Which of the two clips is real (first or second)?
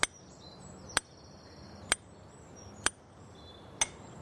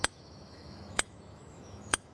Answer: first